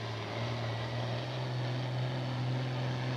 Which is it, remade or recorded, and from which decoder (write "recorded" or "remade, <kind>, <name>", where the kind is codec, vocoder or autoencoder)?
recorded